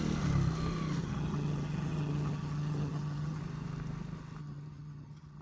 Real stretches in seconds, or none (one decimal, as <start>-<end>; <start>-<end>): 0.0-1.0; 3.4-4.4